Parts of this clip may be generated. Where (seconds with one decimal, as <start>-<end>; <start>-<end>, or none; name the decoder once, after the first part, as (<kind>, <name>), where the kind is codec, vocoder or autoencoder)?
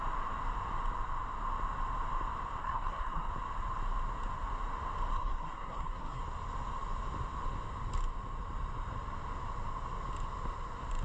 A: 2.6-3.3 (codec, SNAC); 5.1-6.2